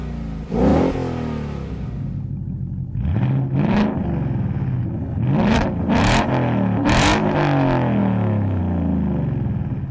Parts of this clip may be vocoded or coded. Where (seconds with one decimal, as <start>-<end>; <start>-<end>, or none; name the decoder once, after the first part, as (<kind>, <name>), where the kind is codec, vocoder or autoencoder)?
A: 8.0-8.6 (autoencoder, DAC-VAE)